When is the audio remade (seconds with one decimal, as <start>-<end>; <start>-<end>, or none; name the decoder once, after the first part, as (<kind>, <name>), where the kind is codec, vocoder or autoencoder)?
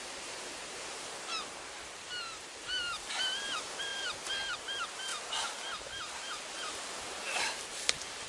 0.0-5.1 (vocoder, BigVGAN v2); 6.9-8.3